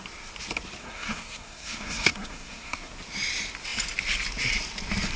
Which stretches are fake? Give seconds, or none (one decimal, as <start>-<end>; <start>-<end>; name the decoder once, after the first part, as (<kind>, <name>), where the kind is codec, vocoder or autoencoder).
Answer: 0.8-2.9 (codec, SNAC)